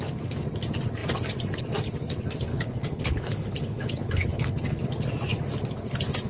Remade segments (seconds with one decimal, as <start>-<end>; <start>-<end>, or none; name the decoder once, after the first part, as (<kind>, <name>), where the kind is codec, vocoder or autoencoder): 2.5-4.8 (codec, HILCodec)

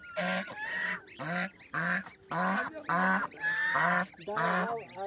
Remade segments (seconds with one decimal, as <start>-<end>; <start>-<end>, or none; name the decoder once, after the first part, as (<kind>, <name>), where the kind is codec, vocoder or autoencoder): none

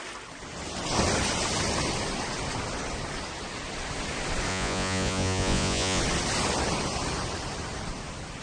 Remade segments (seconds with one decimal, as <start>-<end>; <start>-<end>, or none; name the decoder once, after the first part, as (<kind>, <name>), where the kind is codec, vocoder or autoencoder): 4.5-6.0 (vocoder, Vocos)

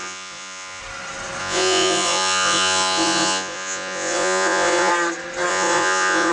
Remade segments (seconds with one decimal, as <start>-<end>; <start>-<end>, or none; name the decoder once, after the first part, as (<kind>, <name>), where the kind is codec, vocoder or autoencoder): 0.0-0.8 (vocoder, Vocos); 1.4-4.9; 5.5-6.3

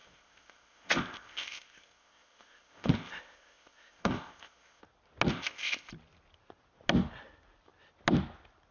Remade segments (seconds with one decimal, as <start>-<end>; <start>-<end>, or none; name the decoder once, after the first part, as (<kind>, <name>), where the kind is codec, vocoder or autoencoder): 0.0-4.8 (codec, ZipCodec); 5.3-5.9

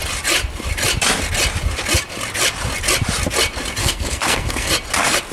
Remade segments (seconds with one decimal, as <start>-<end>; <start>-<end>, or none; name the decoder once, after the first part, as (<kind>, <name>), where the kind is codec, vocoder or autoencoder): 3.8-4.7 (codec, SNAC)

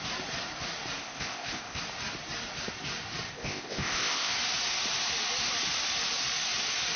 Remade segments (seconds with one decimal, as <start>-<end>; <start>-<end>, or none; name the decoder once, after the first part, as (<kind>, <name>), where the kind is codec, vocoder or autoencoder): 1.0-1.8 (codec, ZipCodec); 3.3-4.3

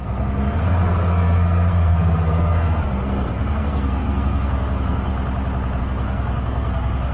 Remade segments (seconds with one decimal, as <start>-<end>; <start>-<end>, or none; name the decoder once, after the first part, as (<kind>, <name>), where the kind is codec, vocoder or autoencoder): 0.0-5.1 (codec, SNAC); 5.8-7.1